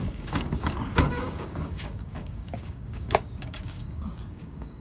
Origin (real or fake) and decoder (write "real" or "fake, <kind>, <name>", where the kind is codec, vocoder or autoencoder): fake, codec, DAC